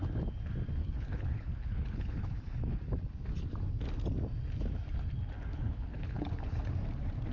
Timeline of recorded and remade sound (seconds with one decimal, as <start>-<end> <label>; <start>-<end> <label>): 0.0-0.8 recorded; 0.8-2.8 remade; 2.8-5.5 recorded; 5.5-6.6 remade; 6.6-7.3 recorded